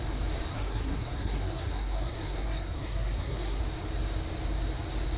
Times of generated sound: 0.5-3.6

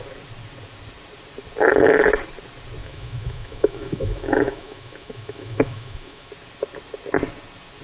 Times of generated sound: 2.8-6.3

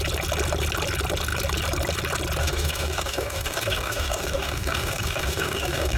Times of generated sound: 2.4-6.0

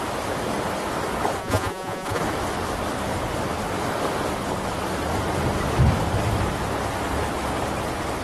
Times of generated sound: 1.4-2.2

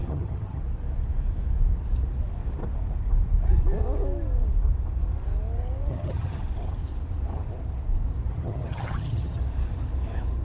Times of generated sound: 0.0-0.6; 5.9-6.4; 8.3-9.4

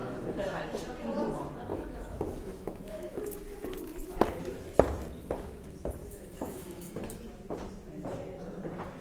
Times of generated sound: 0.0-0.6; 1.7-3.2; 6.0-7.2

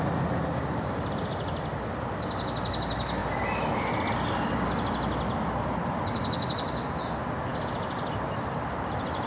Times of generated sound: none

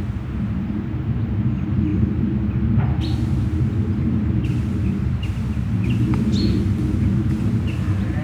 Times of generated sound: none